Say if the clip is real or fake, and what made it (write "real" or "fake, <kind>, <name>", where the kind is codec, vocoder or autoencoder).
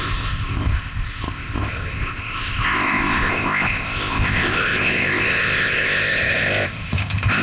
fake, codec, ZipCodec